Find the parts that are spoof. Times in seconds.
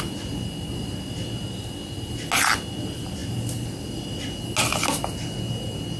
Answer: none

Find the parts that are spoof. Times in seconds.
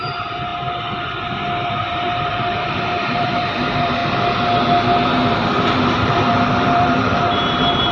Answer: 0.0-0.5; 1.7-4.0; 5.0-7.9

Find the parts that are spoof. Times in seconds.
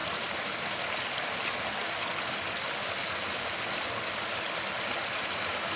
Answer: none